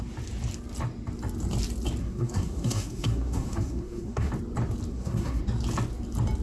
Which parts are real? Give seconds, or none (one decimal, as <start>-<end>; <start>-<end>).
0.0-2.0; 4.3-4.9; 5.4-6.4